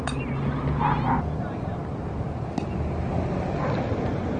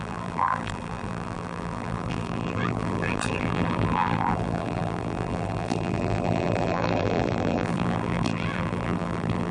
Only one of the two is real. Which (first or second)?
first